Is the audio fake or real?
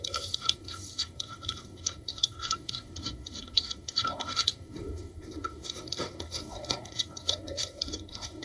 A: fake